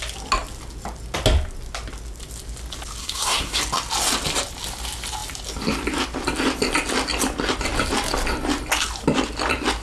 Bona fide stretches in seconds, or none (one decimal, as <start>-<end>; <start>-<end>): 0.0-3.0; 3.6-9.8